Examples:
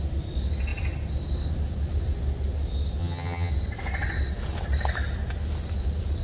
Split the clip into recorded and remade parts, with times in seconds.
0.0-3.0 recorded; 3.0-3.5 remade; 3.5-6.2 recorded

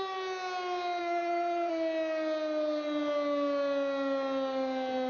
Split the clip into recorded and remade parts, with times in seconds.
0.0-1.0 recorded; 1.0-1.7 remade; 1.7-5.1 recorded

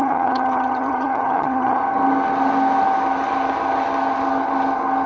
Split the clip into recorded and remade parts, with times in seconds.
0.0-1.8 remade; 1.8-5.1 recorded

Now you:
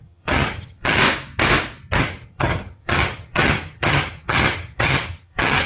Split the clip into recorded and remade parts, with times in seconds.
0.0-1.0 remade; 1.0-2.0 recorded; 2.0-5.7 remade

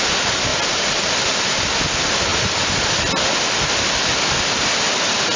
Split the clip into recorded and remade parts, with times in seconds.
0.0-5.4 recorded

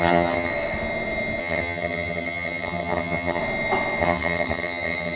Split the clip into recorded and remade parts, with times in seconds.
0.0-0.5 remade; 0.5-1.4 recorded; 1.4-3.4 remade; 3.4-4.0 recorded; 4.0-5.2 remade

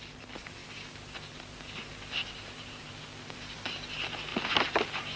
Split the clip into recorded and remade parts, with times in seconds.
0.0-5.2 recorded

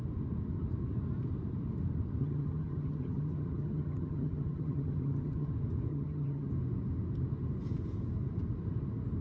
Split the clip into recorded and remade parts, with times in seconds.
0.0-2.2 recorded; 2.2-5.5 remade; 5.5-5.9 recorded; 5.9-6.5 remade; 6.5-9.2 recorded